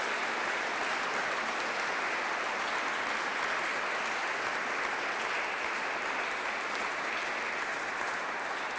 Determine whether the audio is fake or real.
real